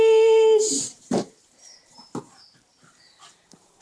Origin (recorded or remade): remade